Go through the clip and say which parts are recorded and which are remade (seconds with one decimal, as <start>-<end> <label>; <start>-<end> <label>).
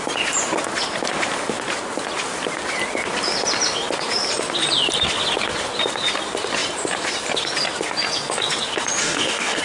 0.0-9.0 recorded; 9.0-9.6 remade